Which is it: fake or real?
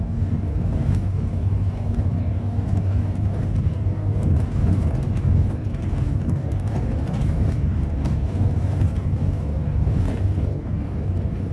fake